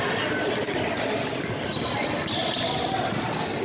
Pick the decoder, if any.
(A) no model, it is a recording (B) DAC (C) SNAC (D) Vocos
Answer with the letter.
A